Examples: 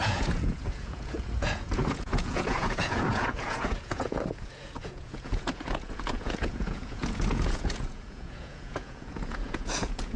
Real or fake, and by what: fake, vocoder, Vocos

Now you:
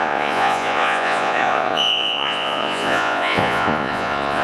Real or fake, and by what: fake, vocoder, Vocos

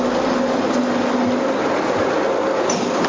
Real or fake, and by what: real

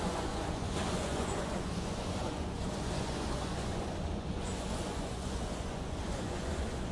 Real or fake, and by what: fake, vocoder, Vocos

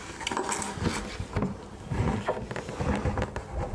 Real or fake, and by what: real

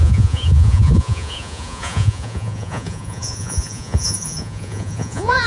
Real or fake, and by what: fake, vocoder, Vocos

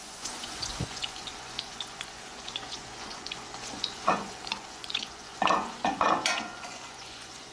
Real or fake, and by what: fake, vocoder, Vocos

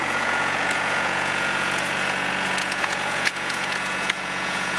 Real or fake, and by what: fake, vocoder, Vocos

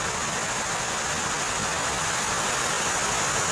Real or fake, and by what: real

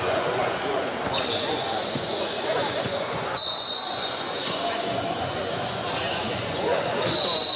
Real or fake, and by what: fake, vocoder, Vocos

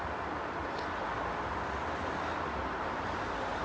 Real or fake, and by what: real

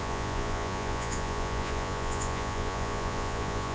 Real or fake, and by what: fake, vocoder, Vocos